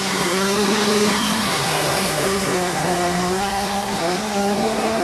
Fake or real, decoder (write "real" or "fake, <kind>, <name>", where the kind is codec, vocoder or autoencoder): fake, codec, SNAC